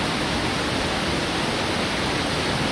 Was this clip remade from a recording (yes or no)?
no